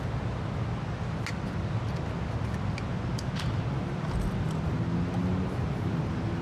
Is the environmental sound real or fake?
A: real